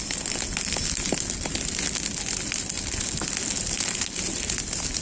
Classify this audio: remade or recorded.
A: recorded